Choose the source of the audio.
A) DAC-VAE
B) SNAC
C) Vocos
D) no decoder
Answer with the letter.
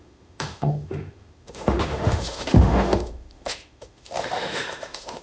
A